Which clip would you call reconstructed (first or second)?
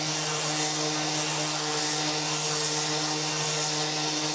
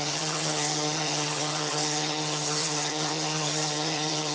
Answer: second